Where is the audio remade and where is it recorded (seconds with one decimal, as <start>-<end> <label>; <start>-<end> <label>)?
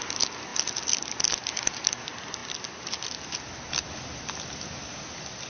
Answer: 0.0-5.5 recorded